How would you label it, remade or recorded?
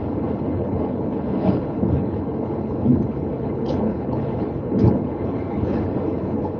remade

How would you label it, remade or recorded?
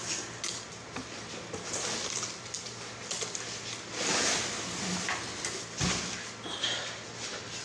recorded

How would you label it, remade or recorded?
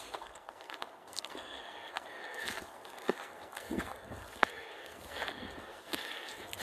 remade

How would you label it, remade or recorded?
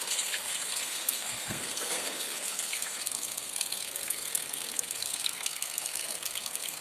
remade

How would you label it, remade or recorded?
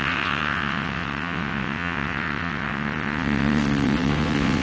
remade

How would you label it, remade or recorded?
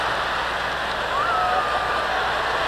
recorded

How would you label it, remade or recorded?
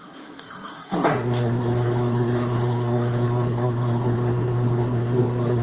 remade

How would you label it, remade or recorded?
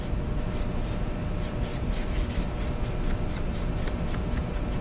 remade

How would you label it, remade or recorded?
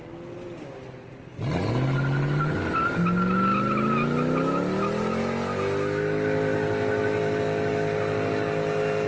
recorded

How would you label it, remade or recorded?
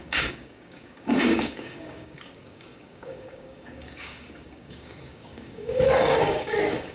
remade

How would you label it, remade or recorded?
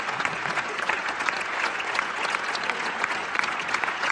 remade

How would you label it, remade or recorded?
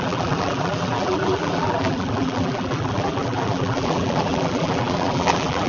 remade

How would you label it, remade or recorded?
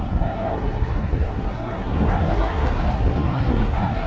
remade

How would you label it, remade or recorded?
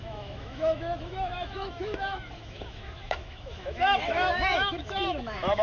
remade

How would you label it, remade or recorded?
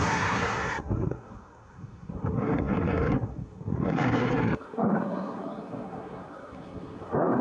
remade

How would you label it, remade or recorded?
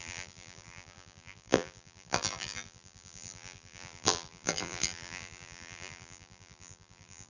remade